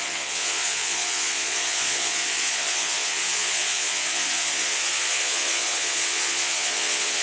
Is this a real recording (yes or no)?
no